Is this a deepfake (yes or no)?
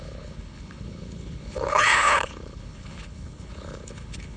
yes